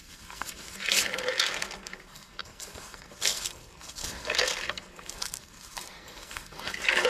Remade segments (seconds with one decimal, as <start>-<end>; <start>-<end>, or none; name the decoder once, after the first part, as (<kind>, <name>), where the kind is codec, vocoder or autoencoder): 0.0-7.1 (codec, SNAC)